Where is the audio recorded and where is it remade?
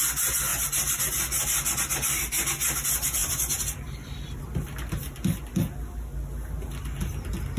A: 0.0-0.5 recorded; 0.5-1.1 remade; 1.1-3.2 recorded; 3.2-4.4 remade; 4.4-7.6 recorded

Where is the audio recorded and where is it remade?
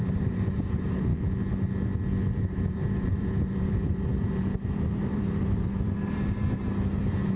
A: 0.0-1.1 remade; 1.1-2.4 recorded; 2.4-7.4 remade